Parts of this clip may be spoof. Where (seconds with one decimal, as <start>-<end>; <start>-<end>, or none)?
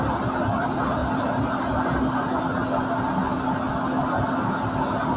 none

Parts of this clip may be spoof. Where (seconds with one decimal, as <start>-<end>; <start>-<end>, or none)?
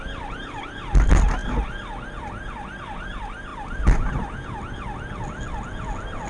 none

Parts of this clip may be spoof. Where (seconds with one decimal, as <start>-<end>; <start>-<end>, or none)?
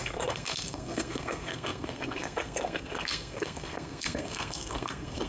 0.0-5.3